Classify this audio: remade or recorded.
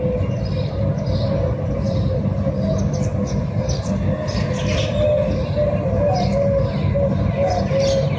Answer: recorded